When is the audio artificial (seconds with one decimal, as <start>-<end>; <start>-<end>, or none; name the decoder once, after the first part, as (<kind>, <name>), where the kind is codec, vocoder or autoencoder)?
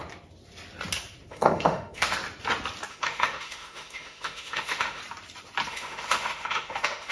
1.3-2.2 (autoencoder, DAC-VAE); 2.9-5.0; 5.7-7.1